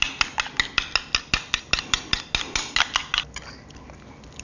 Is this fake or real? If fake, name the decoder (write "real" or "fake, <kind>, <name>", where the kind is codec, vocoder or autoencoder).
real